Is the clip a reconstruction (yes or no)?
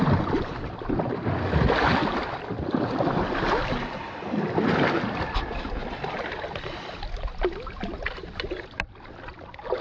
no